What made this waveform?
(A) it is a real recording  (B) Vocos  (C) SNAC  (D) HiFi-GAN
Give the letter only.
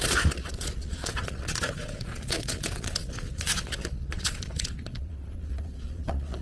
B